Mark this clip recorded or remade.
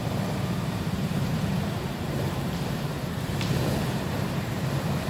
remade